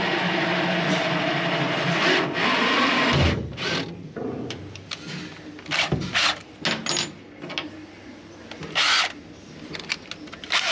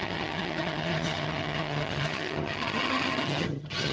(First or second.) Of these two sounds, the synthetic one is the second